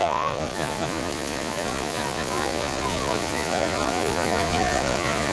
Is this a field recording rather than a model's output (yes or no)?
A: no